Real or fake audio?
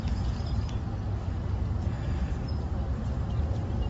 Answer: real